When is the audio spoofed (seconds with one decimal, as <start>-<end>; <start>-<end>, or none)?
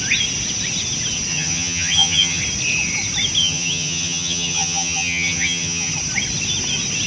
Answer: 1.3-2.4; 3.4-5.9